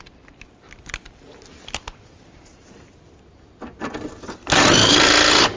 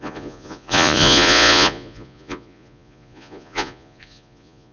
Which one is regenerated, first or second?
second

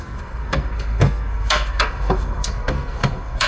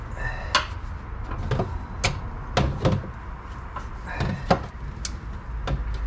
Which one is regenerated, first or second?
first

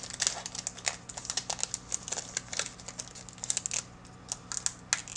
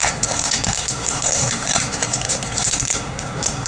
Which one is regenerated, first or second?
second